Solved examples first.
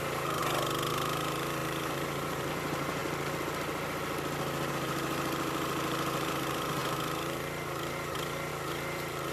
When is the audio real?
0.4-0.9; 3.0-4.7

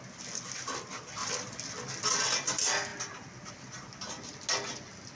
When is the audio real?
0.0-5.1

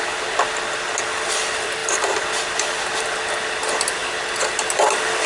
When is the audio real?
0.0-5.3

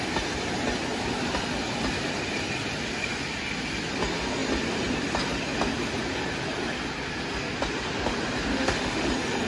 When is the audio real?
0.0-8.5; 9.1-9.5